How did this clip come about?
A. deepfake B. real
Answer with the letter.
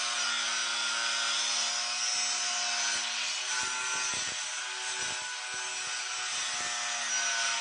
B